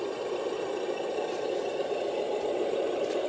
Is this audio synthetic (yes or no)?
yes